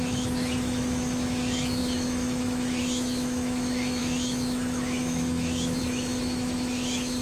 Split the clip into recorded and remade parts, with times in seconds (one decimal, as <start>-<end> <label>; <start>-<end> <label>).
0.0-7.2 remade